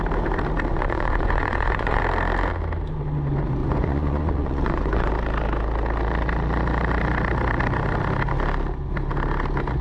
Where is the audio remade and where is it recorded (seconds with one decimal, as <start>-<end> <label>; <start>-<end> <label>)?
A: 0.0-0.7 recorded; 0.7-2.0 remade; 2.0-3.6 recorded; 3.6-5.1 remade; 5.1-9.8 recorded